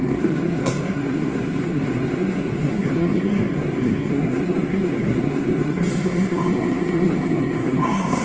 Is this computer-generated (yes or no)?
yes